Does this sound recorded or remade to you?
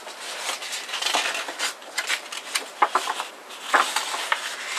recorded